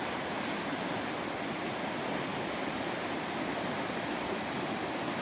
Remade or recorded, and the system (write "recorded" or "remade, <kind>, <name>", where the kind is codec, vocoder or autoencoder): recorded